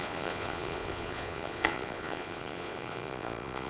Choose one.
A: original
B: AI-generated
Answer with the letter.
B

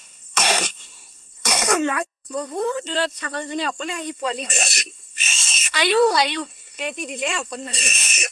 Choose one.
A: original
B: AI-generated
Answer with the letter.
B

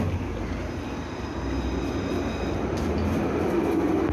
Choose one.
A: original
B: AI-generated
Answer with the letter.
A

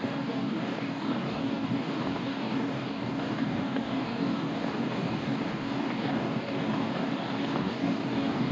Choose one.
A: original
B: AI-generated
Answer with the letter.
B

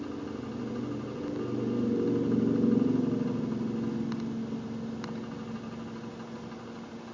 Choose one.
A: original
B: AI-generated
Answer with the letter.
A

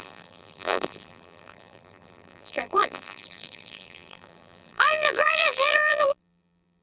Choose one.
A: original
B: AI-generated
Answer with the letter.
B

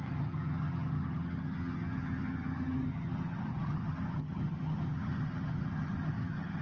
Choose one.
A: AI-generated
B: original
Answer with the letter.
A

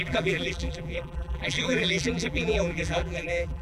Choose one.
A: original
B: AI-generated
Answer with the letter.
B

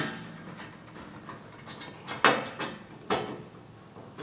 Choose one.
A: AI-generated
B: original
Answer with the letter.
B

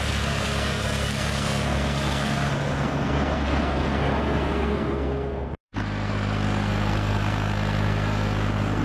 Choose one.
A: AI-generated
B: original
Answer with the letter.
A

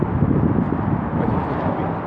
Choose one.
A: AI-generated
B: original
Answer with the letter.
B